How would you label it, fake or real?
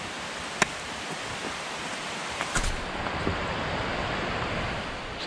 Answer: real